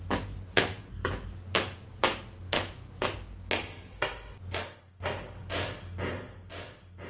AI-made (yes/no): no